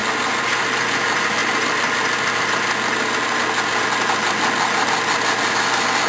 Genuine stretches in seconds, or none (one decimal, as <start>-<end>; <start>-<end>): 0.0-6.1